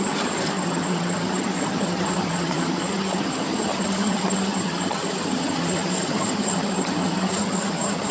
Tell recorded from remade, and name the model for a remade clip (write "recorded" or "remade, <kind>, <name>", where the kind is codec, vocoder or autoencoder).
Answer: remade, vocoder, HiFi-GAN